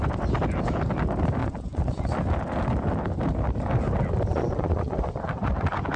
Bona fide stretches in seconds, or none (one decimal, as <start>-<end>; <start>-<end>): 0.0-1.4; 2.2-4.3; 5.5-6.0